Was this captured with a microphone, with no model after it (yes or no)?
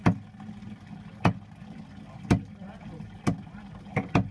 yes